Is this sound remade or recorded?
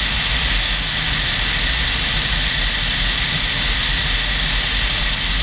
recorded